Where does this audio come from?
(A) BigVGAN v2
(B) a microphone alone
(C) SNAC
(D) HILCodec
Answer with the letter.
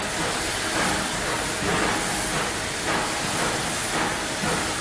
B